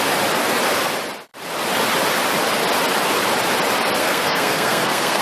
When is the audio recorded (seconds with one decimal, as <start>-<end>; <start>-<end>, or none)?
0.0-4.0